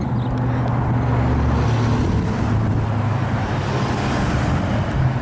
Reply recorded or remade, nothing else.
recorded